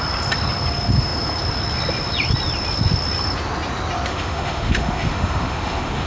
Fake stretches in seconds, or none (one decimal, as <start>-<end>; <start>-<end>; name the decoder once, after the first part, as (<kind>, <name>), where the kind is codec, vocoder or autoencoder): 4.1-6.1 (autoencoder, DAC-VAE)